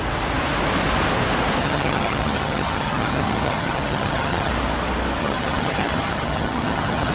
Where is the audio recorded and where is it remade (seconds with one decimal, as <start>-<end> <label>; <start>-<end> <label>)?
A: 0.0-1.6 recorded; 1.6-4.5 remade; 4.5-5.2 recorded; 5.2-7.1 remade